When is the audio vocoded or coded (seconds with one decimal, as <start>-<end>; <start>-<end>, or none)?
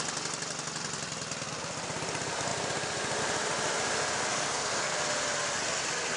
4.3-5.0